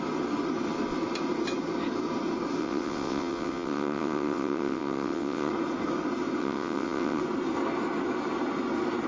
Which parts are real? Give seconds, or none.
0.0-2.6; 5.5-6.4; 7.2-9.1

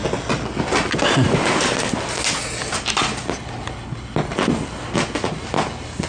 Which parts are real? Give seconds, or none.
0.0-6.1

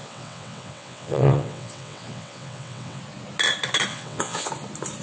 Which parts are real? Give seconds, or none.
3.0-3.9; 4.5-5.0

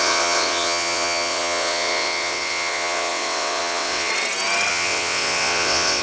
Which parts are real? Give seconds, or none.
4.1-4.7

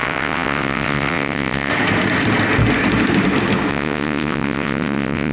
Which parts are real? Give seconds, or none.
1.7-3.7